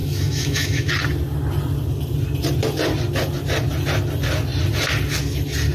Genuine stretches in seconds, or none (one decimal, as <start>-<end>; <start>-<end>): 0.9-5.7